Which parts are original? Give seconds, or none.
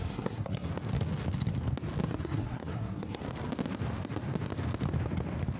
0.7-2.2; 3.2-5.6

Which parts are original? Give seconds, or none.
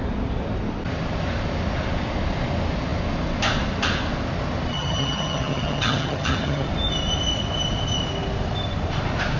0.0-4.7; 6.7-9.4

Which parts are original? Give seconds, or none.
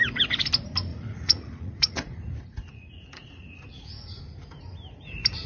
0.0-0.9; 4.2-5.5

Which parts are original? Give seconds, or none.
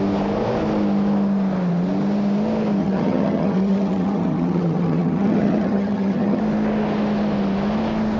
0.0-2.8; 6.4-8.2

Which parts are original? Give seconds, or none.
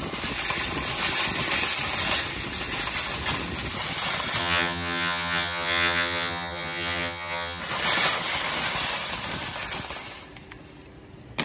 0.0-4.4; 7.6-11.4